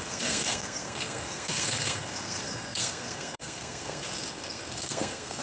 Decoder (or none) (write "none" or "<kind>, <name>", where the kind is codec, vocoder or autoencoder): codec, SNAC